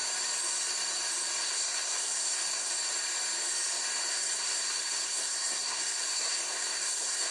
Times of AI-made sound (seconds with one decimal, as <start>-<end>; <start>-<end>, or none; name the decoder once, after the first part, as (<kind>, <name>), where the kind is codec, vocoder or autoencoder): 1.4-2.7 (codec, SNAC); 4.1-7.3